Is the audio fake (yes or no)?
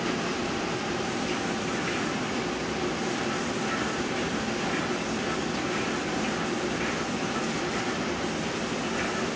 no